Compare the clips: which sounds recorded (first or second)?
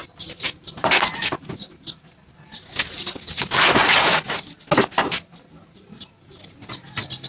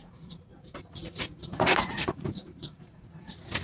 first